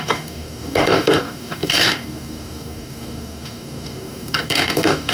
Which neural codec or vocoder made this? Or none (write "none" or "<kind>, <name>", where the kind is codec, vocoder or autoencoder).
codec, DAC